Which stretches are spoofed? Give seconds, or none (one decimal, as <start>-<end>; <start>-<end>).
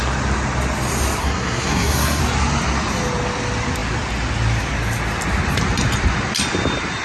1.2-2.2